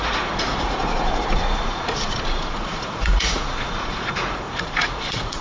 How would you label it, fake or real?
fake